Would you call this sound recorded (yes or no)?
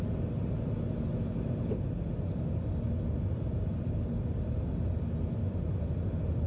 yes